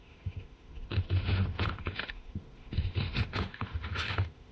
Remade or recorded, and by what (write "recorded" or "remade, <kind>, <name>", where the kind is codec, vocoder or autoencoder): remade, autoencoder, DAC-VAE